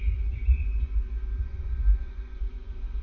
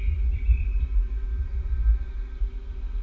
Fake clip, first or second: first